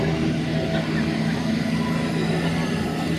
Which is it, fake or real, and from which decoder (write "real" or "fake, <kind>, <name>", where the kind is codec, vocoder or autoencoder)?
real